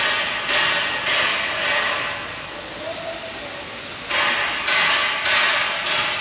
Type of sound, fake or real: real